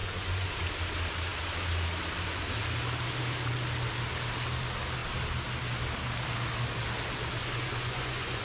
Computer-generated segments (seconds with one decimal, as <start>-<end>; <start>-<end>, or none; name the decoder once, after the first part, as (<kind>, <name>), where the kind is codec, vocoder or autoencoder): 0.0-0.5 (vocoder, Vocos); 7.4-8.4